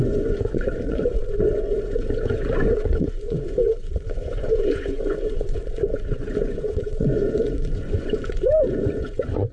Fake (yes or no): yes